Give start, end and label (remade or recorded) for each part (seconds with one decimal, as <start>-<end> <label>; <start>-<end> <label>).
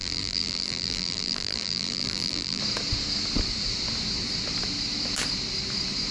0.0-2.6 remade; 2.6-6.1 recorded